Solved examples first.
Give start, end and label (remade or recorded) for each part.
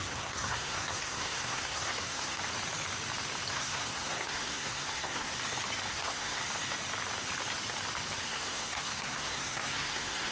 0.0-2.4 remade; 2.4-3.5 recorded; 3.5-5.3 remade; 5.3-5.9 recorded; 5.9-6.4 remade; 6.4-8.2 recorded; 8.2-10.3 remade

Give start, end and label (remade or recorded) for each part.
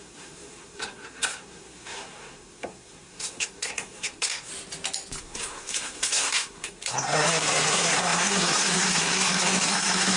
0.0-4.5 remade; 4.5-5.2 recorded; 5.2-10.2 remade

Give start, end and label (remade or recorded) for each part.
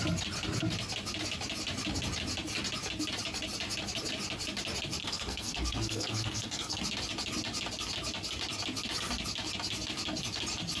0.0-5.0 recorded; 5.0-6.8 remade; 6.8-10.8 recorded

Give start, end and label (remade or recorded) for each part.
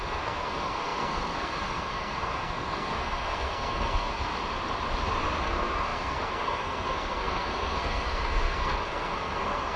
0.0-4.3 remade; 4.3-5.4 recorded; 5.4-9.8 remade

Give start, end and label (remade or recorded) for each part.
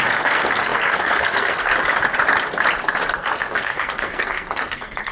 0.0-1.7 remade; 1.7-3.1 recorded; 3.1-5.1 remade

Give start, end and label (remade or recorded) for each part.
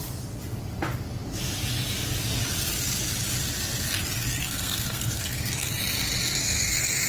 0.0-4.4 recorded; 4.4-5.7 remade; 5.7-6.4 recorded; 6.4-7.1 remade